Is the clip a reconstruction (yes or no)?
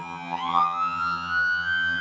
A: yes